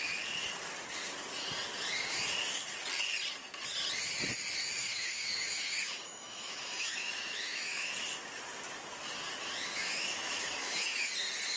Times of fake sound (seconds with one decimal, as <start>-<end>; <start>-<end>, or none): 4.8-7.9; 9.8-11.1